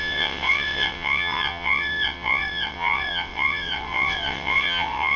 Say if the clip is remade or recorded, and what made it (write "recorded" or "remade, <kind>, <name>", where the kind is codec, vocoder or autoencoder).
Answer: remade, vocoder, WaveNeXt